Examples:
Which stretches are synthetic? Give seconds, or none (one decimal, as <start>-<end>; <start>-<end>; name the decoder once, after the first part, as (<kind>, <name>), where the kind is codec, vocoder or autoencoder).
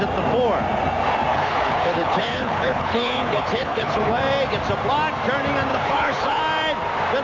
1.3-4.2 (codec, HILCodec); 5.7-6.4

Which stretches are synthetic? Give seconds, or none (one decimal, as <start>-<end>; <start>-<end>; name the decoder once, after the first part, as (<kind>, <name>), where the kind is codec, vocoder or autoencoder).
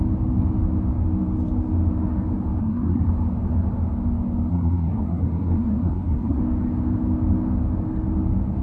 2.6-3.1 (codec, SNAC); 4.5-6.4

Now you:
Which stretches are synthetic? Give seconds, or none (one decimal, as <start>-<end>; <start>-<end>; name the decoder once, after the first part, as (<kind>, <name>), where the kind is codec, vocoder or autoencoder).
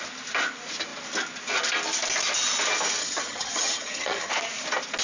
3.0-4.3 (vocoder, HiFi-GAN)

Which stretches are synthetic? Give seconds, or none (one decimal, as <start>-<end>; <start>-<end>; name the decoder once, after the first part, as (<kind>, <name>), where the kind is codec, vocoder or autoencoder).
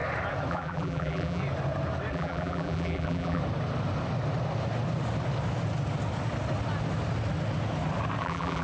0.5-1.4 (vocoder, BigVGAN v2); 2.1-3.4; 8.2-8.6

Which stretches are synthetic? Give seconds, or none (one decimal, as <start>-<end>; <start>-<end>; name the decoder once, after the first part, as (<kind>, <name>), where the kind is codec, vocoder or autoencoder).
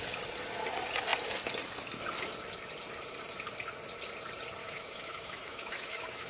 4.6-6.3 (autoencoder, DAC-VAE)